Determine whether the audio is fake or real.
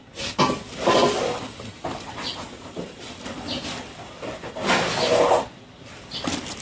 real